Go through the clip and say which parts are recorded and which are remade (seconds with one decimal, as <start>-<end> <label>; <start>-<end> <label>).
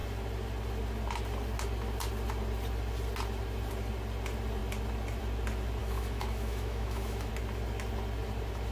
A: 0.0-5.8 recorded; 5.8-7.3 remade; 7.3-8.7 recorded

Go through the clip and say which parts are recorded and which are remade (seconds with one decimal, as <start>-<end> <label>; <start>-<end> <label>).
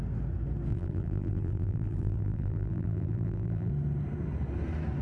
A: 0.0-0.7 recorded; 0.7-3.7 remade; 3.7-5.0 recorded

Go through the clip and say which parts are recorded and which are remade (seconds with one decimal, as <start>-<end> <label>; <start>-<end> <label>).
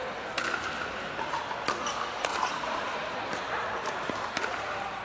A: 0.0-2.3 recorded; 2.3-5.0 remade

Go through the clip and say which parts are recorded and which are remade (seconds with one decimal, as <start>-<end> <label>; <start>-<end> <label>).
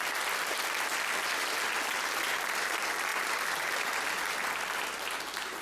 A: 0.0-5.6 recorded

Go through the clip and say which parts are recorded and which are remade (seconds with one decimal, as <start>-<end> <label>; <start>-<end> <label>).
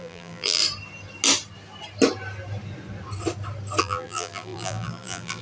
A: 0.0-0.6 remade; 0.6-3.8 recorded; 3.8-5.4 remade